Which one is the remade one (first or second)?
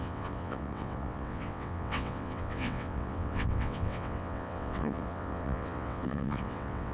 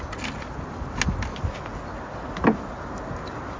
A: first